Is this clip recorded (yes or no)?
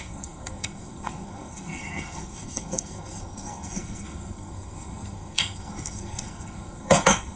no